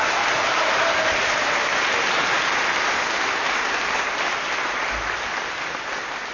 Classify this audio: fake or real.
real